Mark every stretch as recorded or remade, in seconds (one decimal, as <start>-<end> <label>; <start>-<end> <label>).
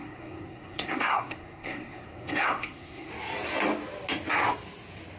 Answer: 0.0-3.1 remade; 3.1-5.2 recorded